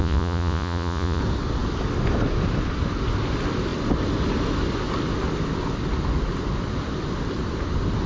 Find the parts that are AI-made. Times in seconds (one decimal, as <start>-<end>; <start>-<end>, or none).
0.0-1.2

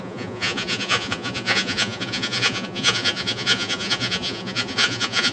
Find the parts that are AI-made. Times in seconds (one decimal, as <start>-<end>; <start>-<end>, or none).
0.0-5.3

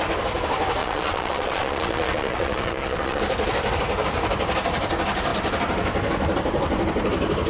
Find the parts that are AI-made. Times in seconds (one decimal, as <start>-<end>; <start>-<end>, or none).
0.8-3.2

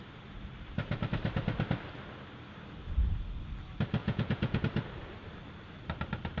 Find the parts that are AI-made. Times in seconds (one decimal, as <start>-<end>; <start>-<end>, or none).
4.0-4.6

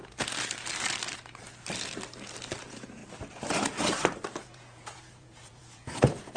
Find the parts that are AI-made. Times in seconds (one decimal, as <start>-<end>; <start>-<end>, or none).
2.6-3.0; 4.4-6.4

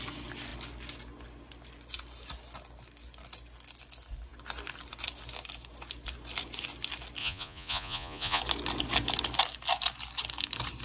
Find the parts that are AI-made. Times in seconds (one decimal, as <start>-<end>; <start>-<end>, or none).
7.2-8.4

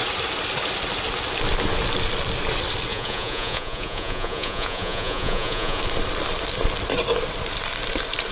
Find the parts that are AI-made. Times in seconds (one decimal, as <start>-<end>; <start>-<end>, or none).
2.9-5.8

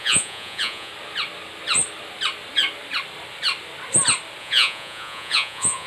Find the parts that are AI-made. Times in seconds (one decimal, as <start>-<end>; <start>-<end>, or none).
0.0-0.9; 4.4-5.9